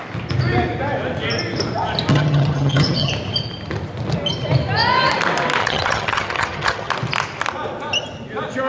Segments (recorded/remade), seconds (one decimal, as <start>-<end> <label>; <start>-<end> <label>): 0.0-2.1 recorded; 2.1-3.1 remade; 3.1-5.6 recorded; 5.6-6.9 remade; 6.9-8.7 recorded